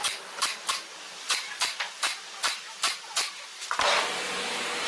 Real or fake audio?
real